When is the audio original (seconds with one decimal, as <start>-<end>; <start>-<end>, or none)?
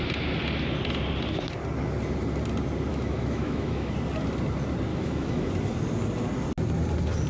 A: 0.0-2.9; 3.9-4.9; 5.5-7.3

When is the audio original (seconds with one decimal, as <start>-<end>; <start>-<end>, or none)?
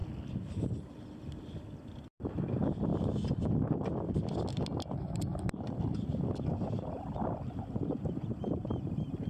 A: 0.0-9.3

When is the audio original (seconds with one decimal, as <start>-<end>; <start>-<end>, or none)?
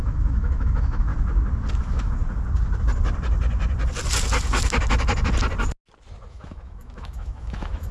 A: 1.1-1.8; 2.2-6.3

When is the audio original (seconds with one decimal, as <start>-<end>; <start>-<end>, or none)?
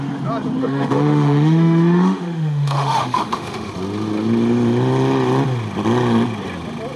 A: 0.0-0.6; 3.7-7.0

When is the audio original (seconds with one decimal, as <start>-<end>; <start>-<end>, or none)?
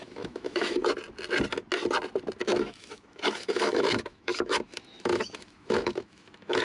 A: 0.8-2.4